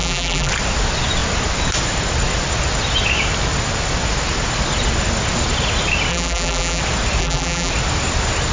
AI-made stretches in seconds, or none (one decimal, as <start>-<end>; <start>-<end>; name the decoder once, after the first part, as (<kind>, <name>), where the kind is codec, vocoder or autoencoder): 0.0-0.5 (vocoder, BigVGAN v2); 6.1-6.8; 7.2-7.7